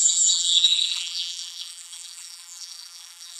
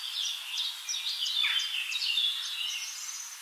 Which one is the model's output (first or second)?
first